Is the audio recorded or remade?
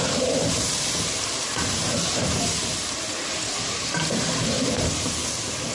remade